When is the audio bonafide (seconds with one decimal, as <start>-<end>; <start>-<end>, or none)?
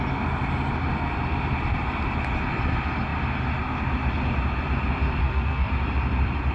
0.0-5.2; 5.7-6.5